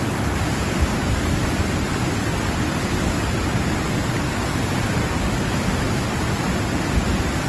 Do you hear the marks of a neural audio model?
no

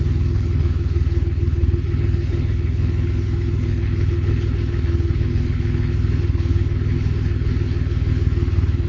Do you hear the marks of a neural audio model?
yes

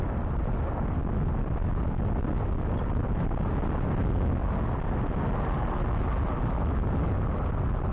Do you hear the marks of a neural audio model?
no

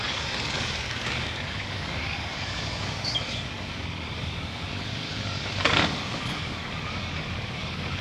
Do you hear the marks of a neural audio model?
yes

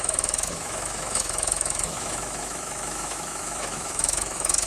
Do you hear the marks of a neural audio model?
yes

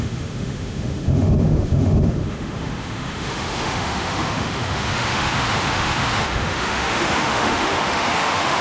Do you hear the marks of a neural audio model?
yes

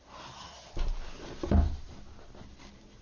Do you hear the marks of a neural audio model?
no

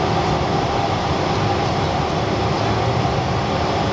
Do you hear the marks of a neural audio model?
no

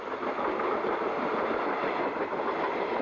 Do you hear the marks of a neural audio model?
no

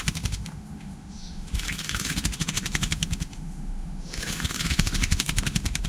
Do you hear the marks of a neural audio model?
yes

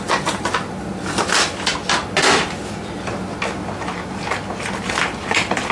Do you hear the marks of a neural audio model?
no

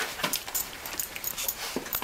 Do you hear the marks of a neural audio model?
yes